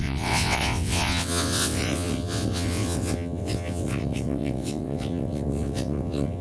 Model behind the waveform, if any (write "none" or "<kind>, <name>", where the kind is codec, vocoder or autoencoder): vocoder, WaveNeXt